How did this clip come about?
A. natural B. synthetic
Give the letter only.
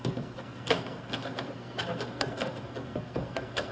B